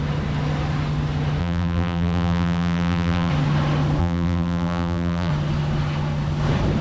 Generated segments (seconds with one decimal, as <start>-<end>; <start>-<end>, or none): 1.4-3.3; 4.0-5.3